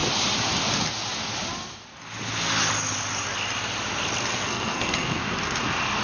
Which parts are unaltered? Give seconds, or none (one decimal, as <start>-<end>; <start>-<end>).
0.0-4.3; 5.2-6.0